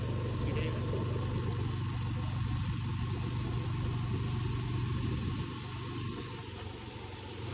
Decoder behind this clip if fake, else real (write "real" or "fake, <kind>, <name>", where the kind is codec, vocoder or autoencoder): real